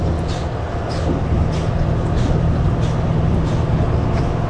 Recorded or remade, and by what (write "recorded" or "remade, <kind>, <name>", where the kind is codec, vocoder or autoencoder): recorded